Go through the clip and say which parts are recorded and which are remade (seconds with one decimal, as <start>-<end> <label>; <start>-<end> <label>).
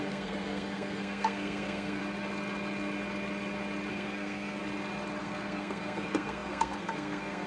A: 0.0-2.0 remade; 2.0-3.9 recorded; 3.9-4.6 remade; 4.6-5.2 recorded; 5.2-7.5 remade